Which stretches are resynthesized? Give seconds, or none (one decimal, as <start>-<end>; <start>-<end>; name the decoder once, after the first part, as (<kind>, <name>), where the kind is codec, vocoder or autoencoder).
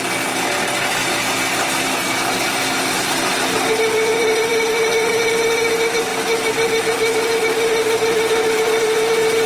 none